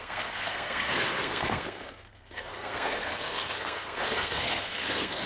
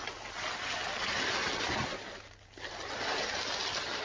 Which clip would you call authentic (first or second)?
second